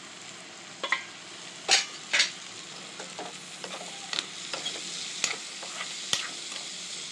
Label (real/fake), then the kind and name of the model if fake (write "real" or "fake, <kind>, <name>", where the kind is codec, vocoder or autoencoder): real